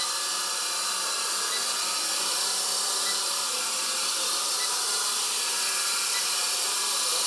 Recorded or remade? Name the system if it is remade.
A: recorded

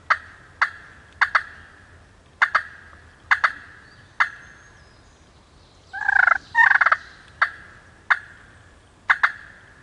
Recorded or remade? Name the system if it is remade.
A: recorded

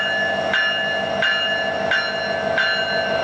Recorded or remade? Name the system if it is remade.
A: recorded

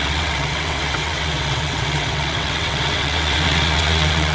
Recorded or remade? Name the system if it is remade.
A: remade, vocoder, WaveNeXt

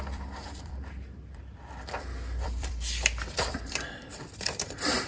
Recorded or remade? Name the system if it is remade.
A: remade, vocoder, BigVGAN v2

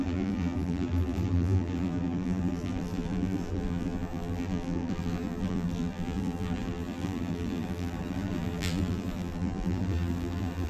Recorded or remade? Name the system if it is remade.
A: remade, vocoder, BigVGAN v2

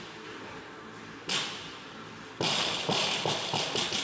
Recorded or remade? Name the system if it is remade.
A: recorded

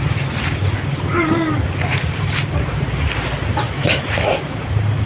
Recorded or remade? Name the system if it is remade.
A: recorded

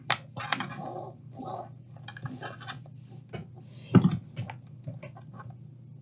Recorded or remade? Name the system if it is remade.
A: recorded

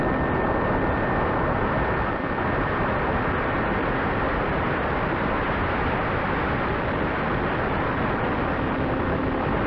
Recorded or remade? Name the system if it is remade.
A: recorded